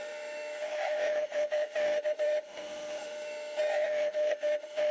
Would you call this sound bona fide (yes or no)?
no